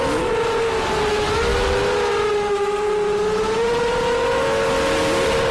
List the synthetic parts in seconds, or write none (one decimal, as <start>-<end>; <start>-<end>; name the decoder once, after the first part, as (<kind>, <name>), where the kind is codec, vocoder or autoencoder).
none